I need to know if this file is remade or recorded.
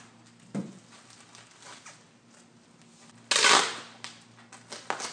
recorded